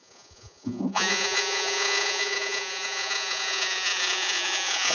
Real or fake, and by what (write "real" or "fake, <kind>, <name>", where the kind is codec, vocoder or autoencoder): fake, vocoder, Vocos